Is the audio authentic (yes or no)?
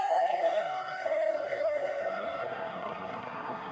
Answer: no